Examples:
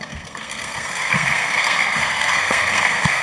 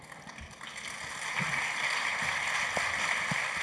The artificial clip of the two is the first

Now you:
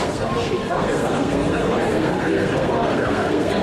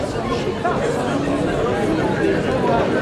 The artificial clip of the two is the first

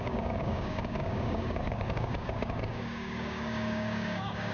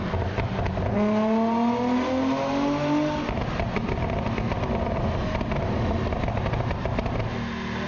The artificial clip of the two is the first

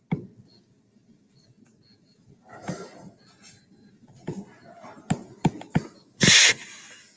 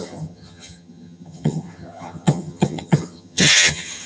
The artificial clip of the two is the second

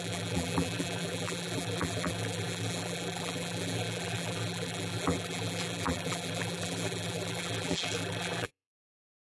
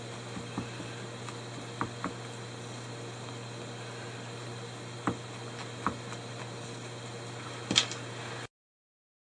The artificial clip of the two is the first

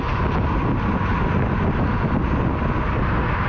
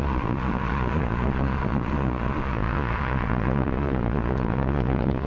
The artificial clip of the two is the second